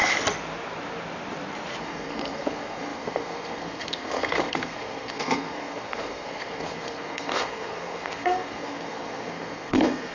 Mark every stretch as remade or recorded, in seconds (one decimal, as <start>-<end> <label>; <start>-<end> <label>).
0.0-1.8 recorded; 1.8-10.1 remade